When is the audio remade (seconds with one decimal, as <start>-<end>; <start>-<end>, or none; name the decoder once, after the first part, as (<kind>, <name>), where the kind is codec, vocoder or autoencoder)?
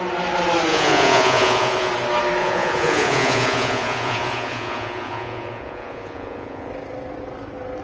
0.7-1.9 (vocoder, Vocos); 2.4-6.7